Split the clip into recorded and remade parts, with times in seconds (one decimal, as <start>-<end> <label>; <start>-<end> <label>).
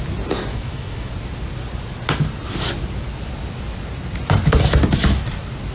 0.0-0.5 recorded; 0.5-1.1 remade; 1.1-5.7 recorded